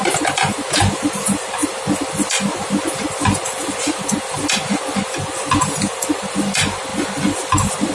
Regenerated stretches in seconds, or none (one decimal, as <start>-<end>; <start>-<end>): none